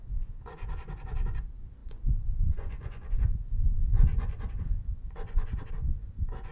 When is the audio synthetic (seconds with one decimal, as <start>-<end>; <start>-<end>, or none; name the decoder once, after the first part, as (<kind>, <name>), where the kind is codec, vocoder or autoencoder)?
0.0-6.5 (vocoder, Vocos)